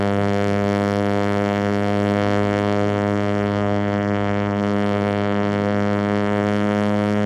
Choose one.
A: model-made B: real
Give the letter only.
A